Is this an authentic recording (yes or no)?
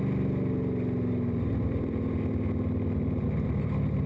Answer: yes